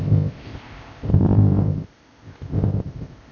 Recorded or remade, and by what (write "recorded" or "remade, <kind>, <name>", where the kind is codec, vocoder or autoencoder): remade, codec, ZipCodec